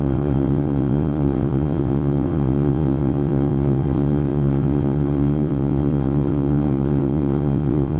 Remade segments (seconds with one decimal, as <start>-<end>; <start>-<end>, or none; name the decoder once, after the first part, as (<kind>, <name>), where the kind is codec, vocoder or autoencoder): 0.0-8.0 (vocoder, WaveNeXt)